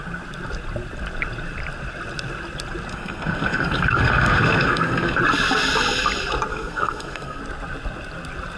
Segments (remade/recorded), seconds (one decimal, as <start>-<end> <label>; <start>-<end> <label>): 0.0-2.9 recorded; 2.9-5.2 remade; 5.2-6.5 recorded; 6.5-7.4 remade; 7.4-8.6 recorded